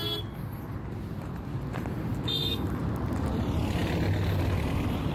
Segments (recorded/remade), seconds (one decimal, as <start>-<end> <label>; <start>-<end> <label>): 0.0-5.1 recorded